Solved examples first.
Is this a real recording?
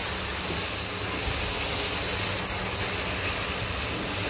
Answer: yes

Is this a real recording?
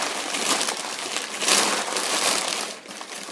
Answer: yes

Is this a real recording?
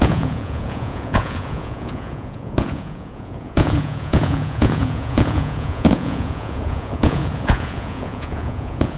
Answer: no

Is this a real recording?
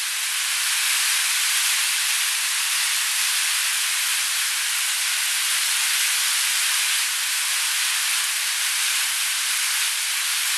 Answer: yes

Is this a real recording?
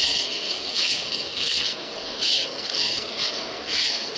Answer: no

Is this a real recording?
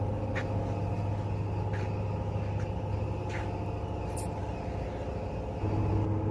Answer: yes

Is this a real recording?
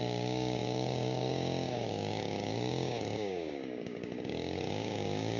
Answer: no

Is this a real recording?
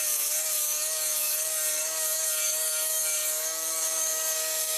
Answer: no